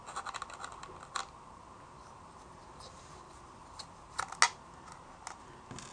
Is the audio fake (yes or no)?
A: no